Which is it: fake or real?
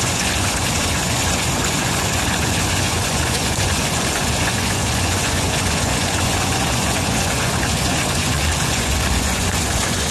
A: fake